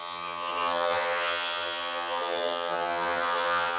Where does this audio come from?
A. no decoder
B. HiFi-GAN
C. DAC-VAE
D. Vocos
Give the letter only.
B